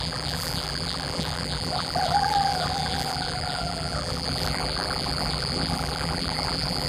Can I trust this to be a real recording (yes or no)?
no